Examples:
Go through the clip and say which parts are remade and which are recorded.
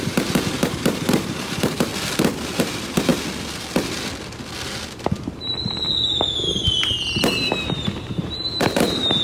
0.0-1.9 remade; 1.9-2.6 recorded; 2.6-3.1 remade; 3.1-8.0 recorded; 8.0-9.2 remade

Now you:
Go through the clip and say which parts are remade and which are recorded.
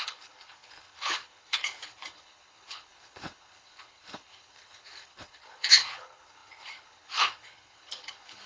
0.0-8.5 remade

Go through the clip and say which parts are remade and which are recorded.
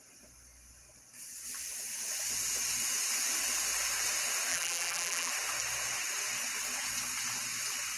0.0-4.5 recorded; 4.5-5.3 remade; 5.3-8.0 recorded